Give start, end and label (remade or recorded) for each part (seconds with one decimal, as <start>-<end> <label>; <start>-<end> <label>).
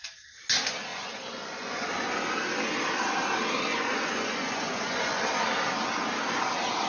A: 0.0-0.9 recorded; 0.9-1.9 remade; 1.9-3.7 recorded; 3.7-5.2 remade; 5.2-6.9 recorded